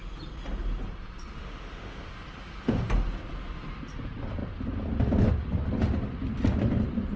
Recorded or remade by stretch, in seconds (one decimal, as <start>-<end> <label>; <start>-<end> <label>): 0.0-1.4 recorded; 1.4-2.1 remade; 2.1-7.2 recorded